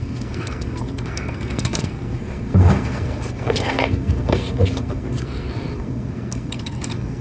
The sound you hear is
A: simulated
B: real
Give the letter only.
A